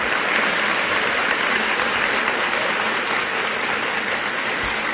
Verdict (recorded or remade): recorded